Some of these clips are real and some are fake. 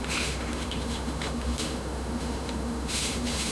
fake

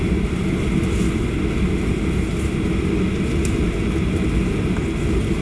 real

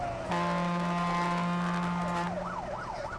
real